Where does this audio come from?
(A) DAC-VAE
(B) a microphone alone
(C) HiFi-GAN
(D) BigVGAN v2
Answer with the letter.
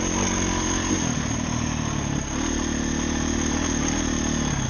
B